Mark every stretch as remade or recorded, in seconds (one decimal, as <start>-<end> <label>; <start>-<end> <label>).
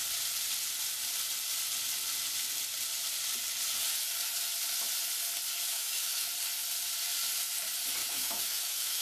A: 0.0-5.7 recorded; 5.7-6.3 remade; 6.3-8.0 recorded; 8.0-9.0 remade